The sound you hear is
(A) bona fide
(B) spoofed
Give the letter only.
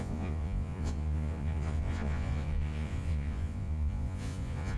B